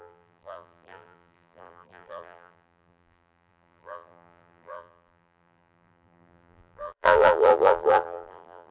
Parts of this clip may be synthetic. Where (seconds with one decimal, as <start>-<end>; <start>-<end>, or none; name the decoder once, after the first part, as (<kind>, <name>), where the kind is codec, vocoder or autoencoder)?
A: 0.0-8.7 (vocoder, BigVGAN v2)